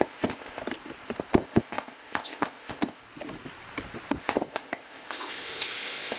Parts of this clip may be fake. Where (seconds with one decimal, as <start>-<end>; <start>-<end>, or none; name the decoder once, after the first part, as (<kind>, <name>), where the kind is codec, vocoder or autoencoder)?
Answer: 0.0-0.6 (codec, ZipCodec); 1.3-3.0; 4.2-6.2